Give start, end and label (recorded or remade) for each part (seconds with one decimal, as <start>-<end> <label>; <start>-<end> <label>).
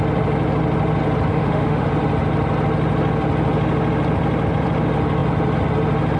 0.0-1.3 recorded; 1.3-1.9 remade; 1.9-6.2 recorded